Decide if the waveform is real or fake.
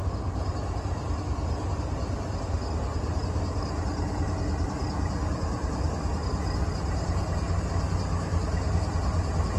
real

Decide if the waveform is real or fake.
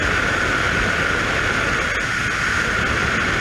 real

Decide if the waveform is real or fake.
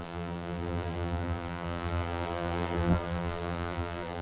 fake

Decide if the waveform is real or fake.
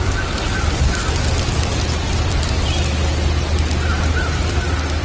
real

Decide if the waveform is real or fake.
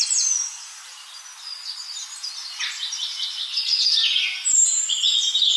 real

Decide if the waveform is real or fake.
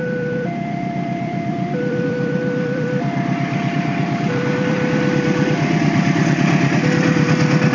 fake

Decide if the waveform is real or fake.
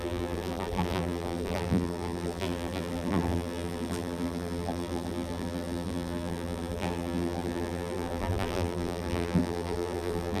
fake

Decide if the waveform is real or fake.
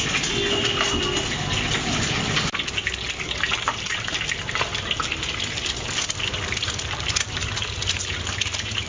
real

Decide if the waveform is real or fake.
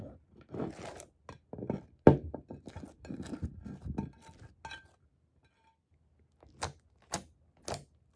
real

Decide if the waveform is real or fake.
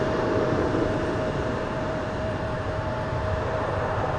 fake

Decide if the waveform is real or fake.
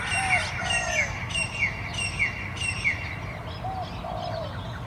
real